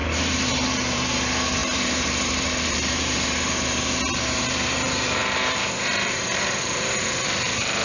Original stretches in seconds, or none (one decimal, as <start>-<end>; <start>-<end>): none